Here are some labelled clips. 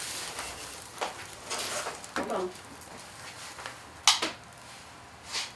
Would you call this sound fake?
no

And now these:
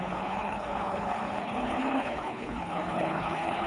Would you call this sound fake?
yes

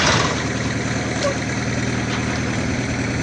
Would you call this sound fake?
no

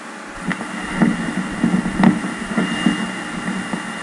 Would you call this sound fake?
no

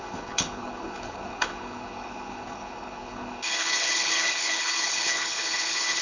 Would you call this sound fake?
yes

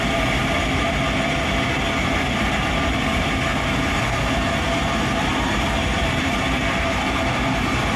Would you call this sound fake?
yes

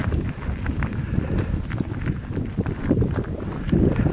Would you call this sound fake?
no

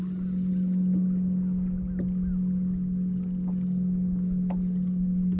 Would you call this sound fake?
no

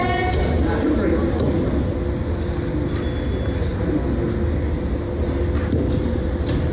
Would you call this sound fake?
no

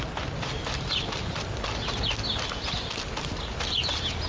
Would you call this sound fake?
no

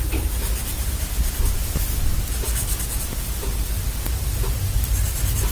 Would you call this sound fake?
no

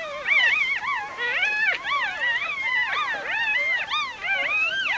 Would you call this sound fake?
no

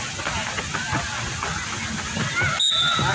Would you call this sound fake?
no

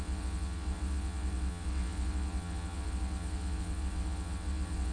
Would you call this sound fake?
yes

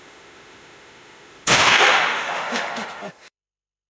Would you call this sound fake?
yes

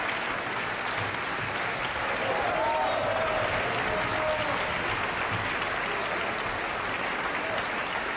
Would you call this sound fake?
no